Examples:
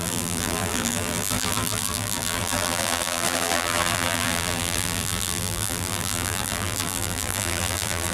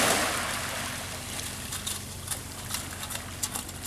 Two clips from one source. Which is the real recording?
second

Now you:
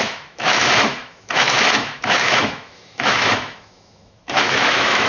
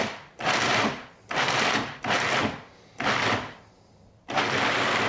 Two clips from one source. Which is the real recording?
second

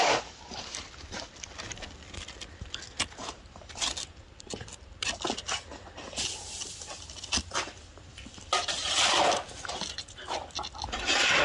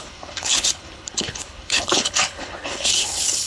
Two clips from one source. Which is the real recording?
first